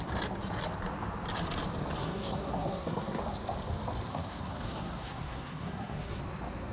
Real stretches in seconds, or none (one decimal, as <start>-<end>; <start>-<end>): 0.0-2.0; 3.2-4.1; 6.2-6.7